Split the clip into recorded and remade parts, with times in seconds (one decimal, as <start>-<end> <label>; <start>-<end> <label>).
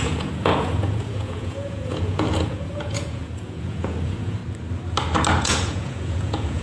0.0-4.4 remade; 4.4-5.4 recorded; 5.4-6.6 remade